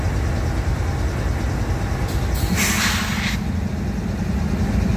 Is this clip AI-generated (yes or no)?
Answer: no